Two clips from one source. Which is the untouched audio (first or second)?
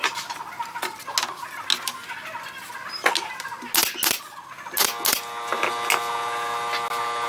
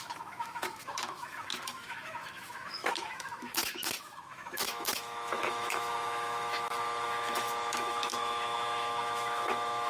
first